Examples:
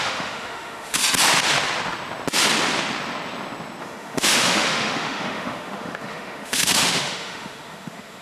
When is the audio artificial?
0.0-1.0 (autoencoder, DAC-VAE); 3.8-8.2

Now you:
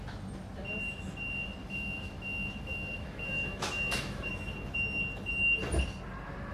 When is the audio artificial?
1.6-4.3 (autoencoder, DAC-VAE)

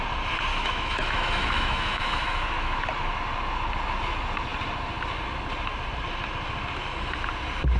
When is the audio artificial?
0.5-3.2 (autoencoder, DAC-VAE)

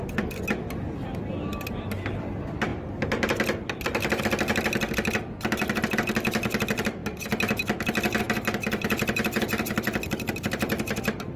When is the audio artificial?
none